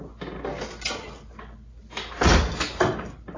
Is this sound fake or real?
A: real